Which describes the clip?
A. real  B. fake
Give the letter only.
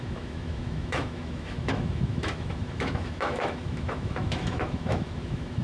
B